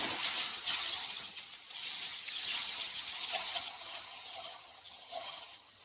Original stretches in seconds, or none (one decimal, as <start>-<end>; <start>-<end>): 0.0-0.5; 1.4-2.1